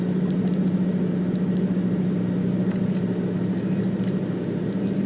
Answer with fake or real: real